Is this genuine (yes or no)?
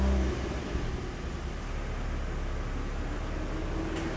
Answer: yes